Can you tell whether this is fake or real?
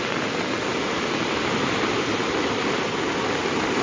real